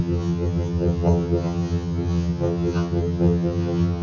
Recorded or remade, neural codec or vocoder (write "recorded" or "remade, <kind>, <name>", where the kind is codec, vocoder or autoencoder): remade, vocoder, HiFi-GAN